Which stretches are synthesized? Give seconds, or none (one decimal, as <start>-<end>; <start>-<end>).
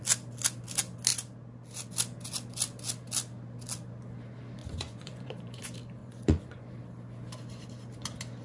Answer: 4.6-5.6; 6.0-6.7